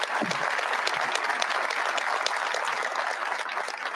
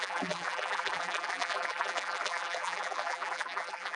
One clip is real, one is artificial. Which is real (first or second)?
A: first